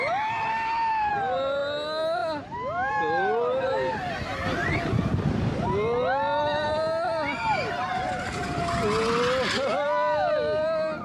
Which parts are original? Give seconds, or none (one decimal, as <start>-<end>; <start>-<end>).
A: 0.0-0.5; 1.1-11.0